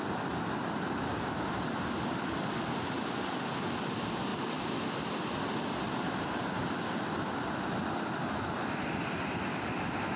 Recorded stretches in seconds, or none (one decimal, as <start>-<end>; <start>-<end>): 0.0-4.3; 5.0-10.2